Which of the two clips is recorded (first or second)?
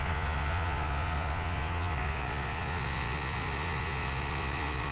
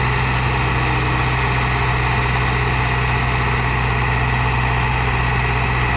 second